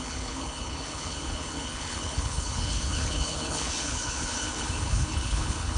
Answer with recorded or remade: remade